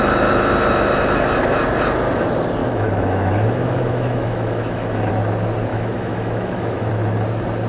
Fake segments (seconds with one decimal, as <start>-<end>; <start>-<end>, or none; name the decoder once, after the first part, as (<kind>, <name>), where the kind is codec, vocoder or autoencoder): 2.6-5.1 (autoencoder, DAC-VAE); 5.7-6.9